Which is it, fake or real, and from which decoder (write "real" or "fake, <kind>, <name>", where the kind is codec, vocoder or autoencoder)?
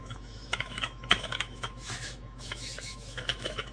fake, autoencoder, DAC-VAE